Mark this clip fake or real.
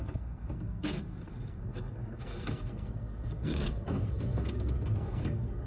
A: fake